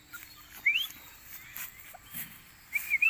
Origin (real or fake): fake